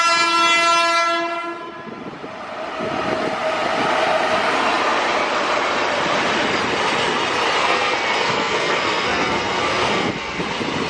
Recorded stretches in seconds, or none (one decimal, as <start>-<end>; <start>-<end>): 0.0-7.6; 10.4-10.9